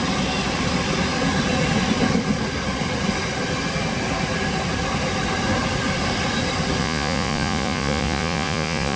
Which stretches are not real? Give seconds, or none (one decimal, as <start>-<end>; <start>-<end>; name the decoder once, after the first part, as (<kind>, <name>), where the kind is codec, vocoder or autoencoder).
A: 6.8-9.0 (vocoder, Vocos)